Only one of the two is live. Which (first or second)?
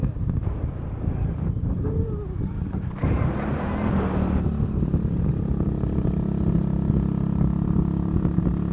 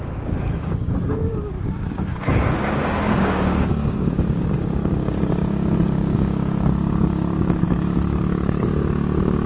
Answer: first